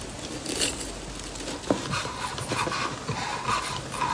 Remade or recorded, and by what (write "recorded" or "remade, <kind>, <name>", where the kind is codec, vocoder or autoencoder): recorded